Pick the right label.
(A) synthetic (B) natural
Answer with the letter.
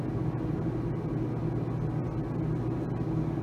B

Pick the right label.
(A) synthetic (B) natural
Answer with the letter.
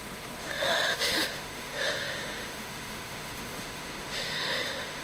A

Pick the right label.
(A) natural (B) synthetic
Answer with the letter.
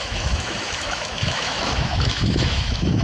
B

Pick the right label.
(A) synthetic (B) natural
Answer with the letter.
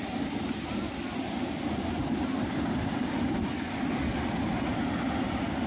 B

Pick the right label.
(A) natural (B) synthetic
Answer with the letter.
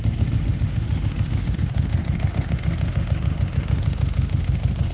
B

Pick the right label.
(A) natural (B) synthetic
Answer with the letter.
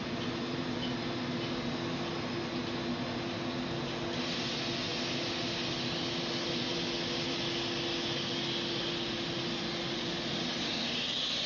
A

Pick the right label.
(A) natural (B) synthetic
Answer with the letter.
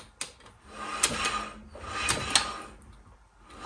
A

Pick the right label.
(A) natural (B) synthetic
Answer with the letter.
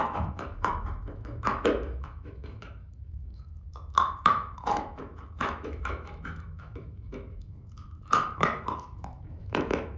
B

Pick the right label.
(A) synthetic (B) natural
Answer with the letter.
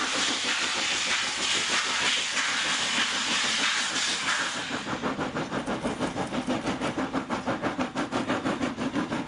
B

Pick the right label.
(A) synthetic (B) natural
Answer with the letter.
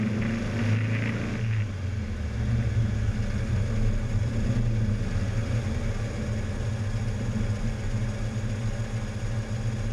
B